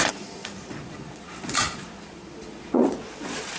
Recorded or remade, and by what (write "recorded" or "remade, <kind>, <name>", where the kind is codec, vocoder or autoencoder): remade, vocoder, Vocos